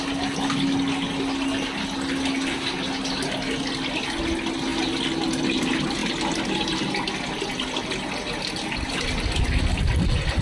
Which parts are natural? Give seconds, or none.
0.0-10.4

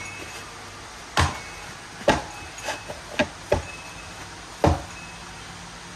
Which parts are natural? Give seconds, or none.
0.0-6.0